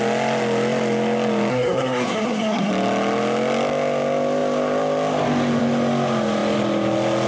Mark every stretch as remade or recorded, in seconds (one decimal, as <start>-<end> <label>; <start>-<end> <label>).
0.0-1.5 recorded; 1.5-2.7 remade; 2.7-7.3 recorded